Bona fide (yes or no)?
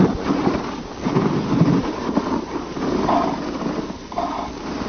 yes